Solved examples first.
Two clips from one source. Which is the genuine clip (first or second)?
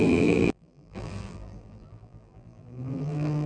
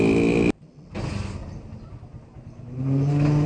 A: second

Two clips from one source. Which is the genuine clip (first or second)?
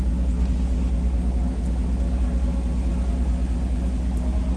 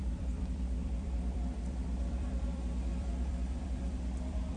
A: first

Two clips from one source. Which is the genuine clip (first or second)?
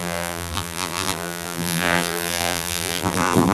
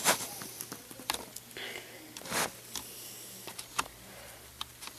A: second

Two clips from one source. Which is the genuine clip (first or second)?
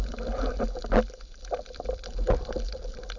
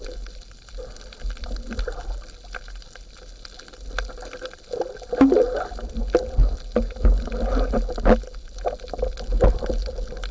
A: second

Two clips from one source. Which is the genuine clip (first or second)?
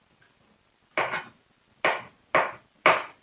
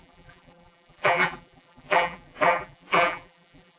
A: first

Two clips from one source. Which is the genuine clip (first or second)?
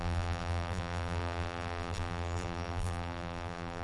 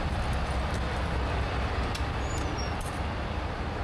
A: second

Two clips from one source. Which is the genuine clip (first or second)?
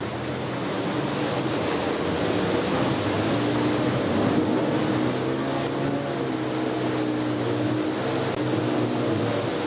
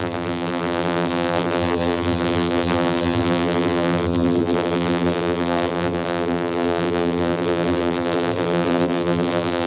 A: first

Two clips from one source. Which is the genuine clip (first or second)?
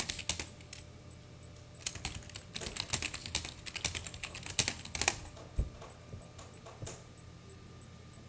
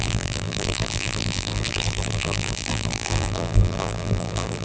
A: first